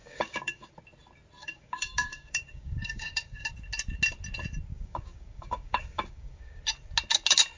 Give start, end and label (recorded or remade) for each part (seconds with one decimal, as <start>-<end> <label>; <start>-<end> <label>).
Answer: 0.0-0.7 remade; 0.7-1.4 recorded; 1.4-3.5 remade; 3.5-4.7 recorded; 4.7-6.6 remade; 6.6-7.6 recorded